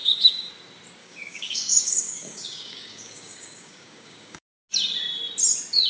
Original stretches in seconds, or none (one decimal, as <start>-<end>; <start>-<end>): 0.5-1.0; 4.5-5.9

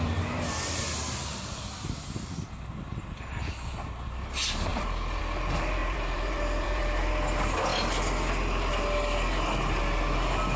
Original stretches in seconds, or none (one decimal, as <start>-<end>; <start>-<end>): 0.0-4.7; 5.2-5.8; 7.1-10.6

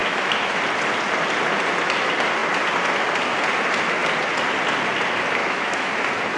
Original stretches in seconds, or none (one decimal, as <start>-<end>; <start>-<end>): 0.6-5.4; 5.9-6.4

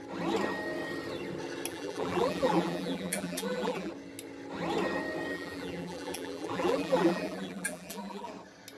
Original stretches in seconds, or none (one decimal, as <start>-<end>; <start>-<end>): 0.0-1.7; 3.9-5.3; 8.3-8.8

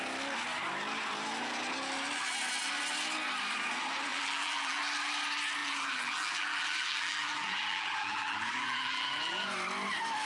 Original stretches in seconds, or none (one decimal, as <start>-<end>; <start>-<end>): 0.0-4.1; 4.8-5.6; 9.5-10.3

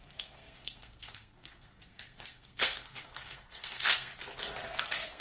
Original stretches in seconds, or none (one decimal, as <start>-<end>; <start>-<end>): 4.1-4.8

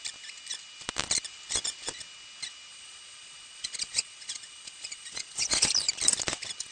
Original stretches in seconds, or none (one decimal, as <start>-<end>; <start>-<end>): 0.0-2.7; 5.7-6.7

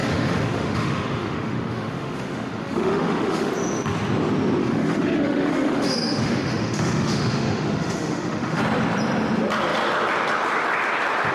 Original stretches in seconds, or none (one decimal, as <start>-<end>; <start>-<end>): 3.5-4.6; 8.6-11.3